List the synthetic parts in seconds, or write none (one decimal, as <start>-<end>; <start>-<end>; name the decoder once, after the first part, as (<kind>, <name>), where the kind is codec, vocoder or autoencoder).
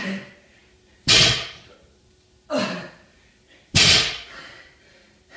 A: none